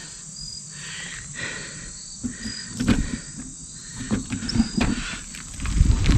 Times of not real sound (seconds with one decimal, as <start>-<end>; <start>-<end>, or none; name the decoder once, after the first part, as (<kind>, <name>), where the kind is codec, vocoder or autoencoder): 3.8-6.2 (vocoder, BigVGAN v2)